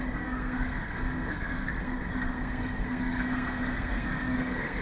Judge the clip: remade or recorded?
remade